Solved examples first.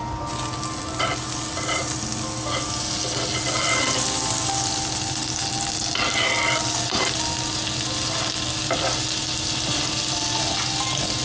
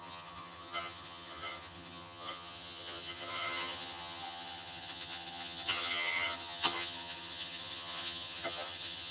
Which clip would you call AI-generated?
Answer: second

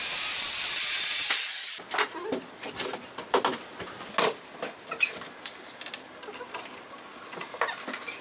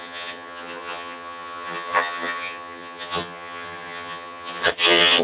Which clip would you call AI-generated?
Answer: second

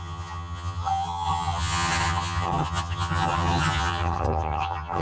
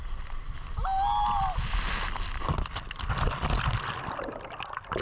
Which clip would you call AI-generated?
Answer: first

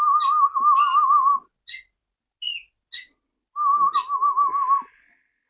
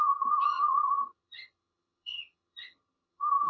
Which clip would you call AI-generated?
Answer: second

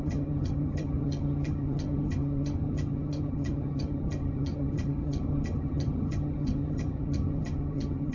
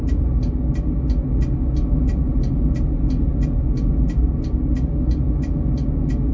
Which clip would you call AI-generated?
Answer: first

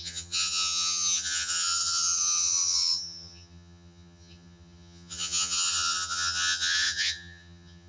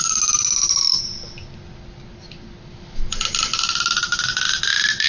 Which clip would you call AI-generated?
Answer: first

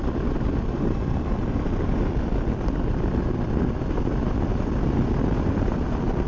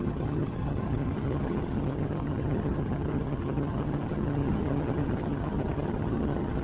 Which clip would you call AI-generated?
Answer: second